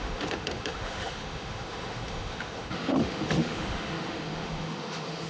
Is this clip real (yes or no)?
no